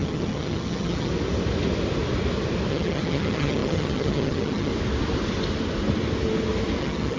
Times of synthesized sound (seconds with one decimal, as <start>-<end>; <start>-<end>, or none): 0.0-1.1; 2.7-4.7; 6.8-7.2